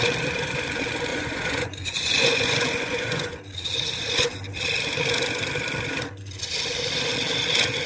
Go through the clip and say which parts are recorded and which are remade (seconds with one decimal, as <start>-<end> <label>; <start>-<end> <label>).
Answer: 0.0-1.1 recorded; 1.1-3.3 remade; 3.3-7.9 recorded